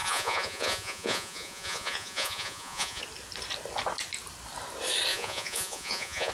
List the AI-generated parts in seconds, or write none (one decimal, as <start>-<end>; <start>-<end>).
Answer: 0.0-3.0; 5.1-6.3